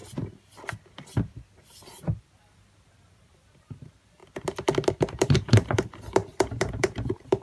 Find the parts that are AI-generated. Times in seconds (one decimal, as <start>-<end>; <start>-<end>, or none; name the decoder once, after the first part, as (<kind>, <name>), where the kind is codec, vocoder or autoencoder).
2.2-4.2 (vocoder, BigVGAN v2); 4.9-7.4